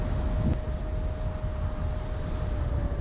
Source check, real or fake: real